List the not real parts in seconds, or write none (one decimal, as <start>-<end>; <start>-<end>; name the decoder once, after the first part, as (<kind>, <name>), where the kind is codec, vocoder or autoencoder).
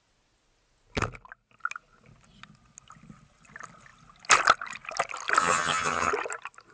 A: 5.4-6.1 (vocoder, HiFi-GAN)